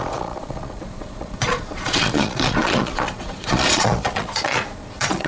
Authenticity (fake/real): fake